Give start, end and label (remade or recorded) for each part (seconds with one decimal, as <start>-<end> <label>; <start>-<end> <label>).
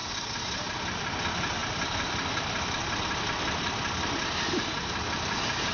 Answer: 0.0-5.7 recorded